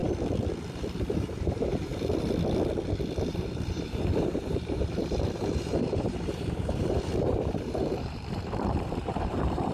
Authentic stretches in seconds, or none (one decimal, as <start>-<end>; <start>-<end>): 0.0-0.7; 1.9-3.3

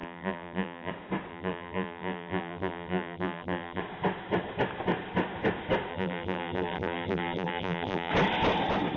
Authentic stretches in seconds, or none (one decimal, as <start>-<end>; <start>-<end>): 0.9-1.3; 3.8-5.9; 8.1-9.0